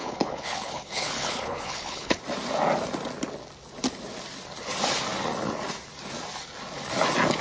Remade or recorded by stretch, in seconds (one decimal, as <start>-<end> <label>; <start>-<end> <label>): 0.0-2.2 remade; 2.2-7.4 recorded